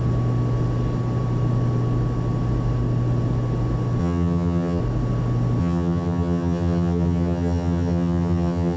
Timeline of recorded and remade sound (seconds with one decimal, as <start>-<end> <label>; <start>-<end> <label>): 0.0-4.0 recorded; 4.0-4.8 remade; 4.8-5.6 recorded; 5.6-8.8 remade